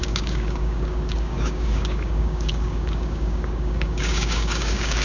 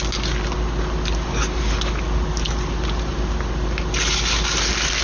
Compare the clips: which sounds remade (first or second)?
first